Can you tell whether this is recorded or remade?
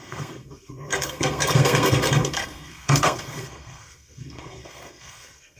remade